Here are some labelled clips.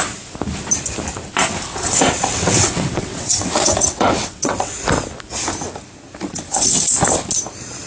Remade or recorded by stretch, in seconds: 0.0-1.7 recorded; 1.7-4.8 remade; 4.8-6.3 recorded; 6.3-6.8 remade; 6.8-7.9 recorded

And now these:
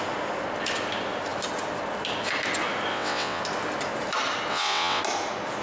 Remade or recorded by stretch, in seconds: 0.0-2.9 recorded; 2.9-3.4 remade; 3.4-4.5 recorded; 4.5-5.0 remade; 5.0-5.6 recorded

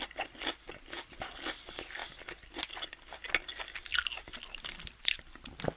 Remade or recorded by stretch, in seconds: 0.0-5.8 recorded

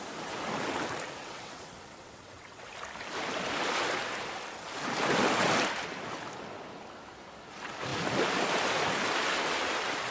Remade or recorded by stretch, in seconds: 0.0-1.2 recorded; 1.2-2.7 remade; 2.7-10.1 recorded

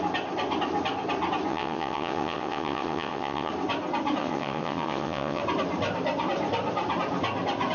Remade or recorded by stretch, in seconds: 0.0-1.5 recorded; 1.5-3.5 remade; 3.5-4.2 recorded; 4.2-5.4 remade; 5.4-7.7 recorded

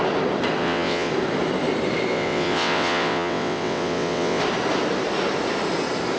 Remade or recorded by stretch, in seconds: 0.0-0.6 recorded; 0.6-1.1 remade; 1.1-2.1 recorded; 2.1-4.4 remade; 4.4-6.2 recorded